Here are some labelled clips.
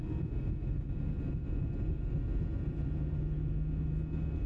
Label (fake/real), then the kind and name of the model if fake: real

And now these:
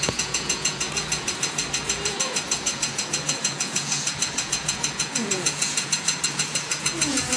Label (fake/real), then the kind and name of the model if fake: fake, vocoder, Vocos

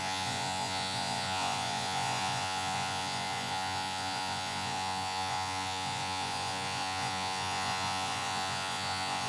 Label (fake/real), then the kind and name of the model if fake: fake, vocoder, Vocos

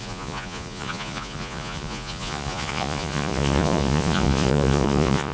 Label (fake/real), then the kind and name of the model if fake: fake, vocoder, Vocos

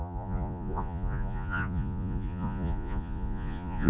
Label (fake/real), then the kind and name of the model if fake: fake, vocoder, Vocos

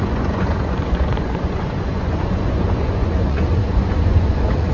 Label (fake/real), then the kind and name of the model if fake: fake, vocoder, Vocos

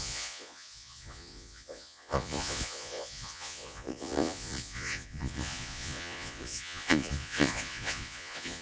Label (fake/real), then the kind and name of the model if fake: fake, vocoder, Vocos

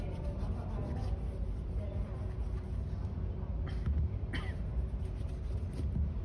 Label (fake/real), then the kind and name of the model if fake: real